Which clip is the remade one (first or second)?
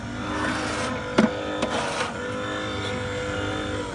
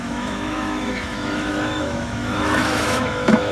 second